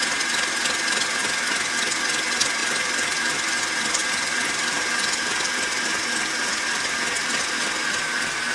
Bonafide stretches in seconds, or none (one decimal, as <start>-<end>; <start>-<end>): 0.0-2.6; 3.6-4.0; 6.0-8.5